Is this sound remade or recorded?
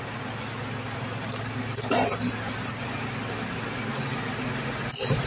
recorded